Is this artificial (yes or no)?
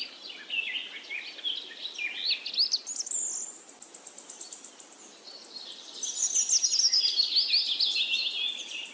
no